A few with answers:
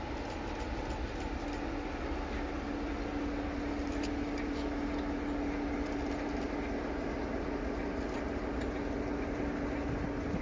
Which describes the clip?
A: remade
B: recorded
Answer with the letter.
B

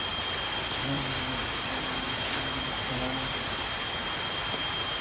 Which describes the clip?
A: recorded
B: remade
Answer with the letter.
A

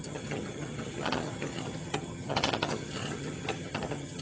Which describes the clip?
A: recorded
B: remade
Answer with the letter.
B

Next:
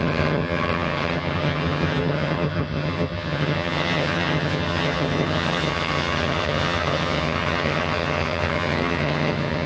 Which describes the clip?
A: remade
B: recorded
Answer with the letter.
A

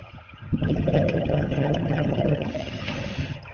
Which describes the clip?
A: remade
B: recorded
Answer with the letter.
A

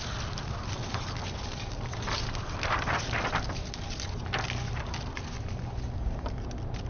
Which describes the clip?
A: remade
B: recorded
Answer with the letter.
B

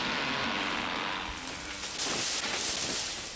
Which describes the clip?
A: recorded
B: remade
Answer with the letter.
A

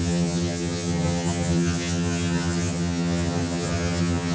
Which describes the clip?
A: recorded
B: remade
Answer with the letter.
B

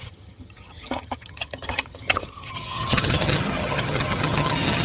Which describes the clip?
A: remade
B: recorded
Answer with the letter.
A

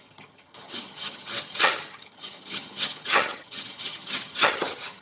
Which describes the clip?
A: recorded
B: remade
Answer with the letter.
B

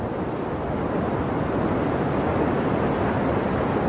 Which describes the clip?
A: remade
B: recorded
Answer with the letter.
B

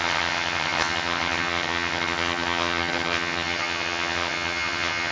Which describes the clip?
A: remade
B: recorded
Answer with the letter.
A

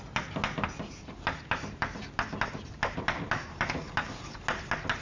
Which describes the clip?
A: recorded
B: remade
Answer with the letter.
A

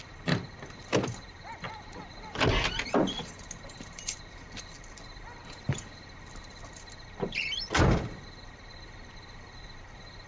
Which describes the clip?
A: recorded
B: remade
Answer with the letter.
A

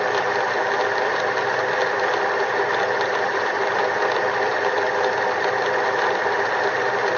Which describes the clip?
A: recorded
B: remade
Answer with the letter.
A